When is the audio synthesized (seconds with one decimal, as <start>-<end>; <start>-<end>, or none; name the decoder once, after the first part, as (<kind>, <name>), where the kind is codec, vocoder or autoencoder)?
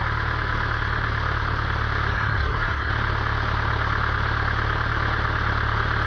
2.1-2.9 (codec, SNAC)